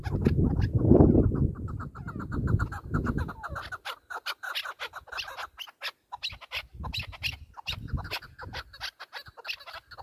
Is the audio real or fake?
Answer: real